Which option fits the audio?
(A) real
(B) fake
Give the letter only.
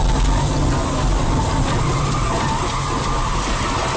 A